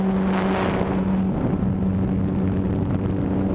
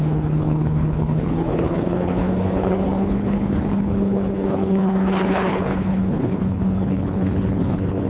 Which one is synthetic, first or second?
second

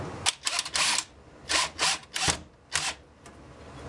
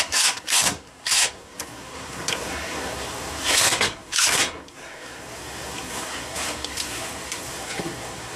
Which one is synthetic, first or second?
second